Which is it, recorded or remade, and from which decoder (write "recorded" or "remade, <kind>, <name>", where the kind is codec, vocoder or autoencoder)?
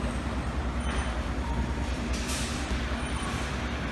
remade, vocoder, BigVGAN v2